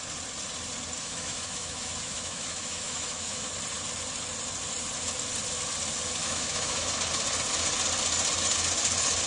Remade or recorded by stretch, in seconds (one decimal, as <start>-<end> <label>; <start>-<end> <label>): 0.0-1.0 recorded; 1.0-3.5 remade; 3.5-6.2 recorded; 6.2-6.9 remade; 6.9-9.3 recorded